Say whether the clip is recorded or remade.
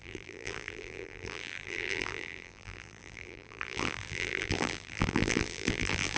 remade